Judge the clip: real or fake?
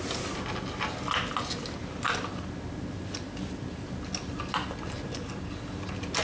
real